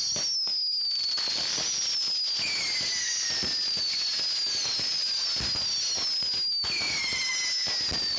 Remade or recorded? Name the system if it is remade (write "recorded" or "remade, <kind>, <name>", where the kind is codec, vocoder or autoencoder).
recorded